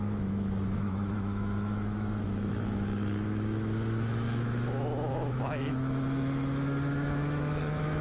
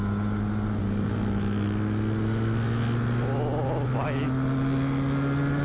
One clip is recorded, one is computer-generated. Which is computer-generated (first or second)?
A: first